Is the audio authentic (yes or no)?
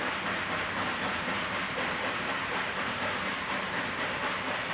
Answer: no